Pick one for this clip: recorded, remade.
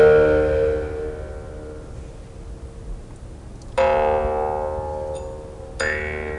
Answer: recorded